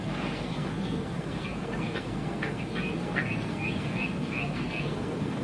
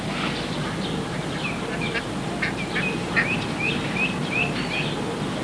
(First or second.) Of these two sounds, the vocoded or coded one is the first